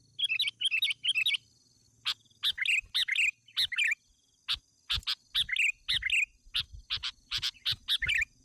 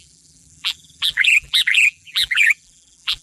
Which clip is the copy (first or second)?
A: second